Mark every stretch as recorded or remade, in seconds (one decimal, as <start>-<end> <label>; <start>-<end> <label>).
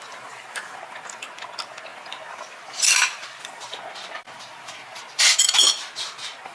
0.0-1.9 recorded; 1.9-5.0 remade; 5.0-6.5 recorded